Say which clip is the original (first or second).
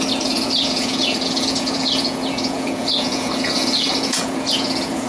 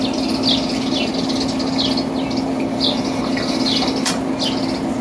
second